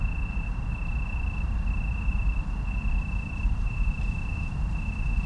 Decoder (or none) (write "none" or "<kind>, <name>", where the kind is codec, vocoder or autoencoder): none